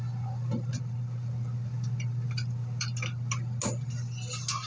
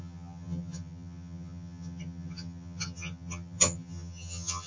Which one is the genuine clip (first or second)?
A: first